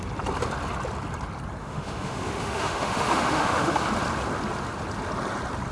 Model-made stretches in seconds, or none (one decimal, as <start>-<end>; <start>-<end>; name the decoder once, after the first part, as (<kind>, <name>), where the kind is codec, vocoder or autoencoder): 1.6-3.8 (autoencoder, DAC-VAE)